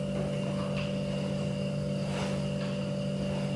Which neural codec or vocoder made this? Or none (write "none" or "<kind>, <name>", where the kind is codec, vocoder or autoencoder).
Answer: none